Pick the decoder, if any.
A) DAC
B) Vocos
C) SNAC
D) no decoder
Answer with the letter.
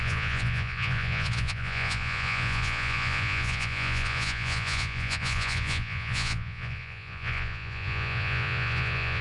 B